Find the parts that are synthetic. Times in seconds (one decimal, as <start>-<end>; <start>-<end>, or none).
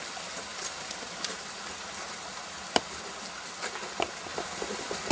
none